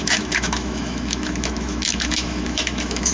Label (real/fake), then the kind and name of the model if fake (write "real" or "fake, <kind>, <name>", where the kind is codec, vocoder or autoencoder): fake, autoencoder, DAC-VAE